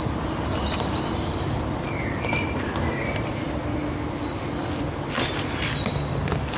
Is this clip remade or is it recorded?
recorded